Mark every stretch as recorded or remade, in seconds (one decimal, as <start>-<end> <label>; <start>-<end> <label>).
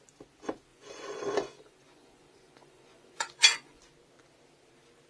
0.0-0.7 recorded; 0.7-3.8 remade; 3.8-5.1 recorded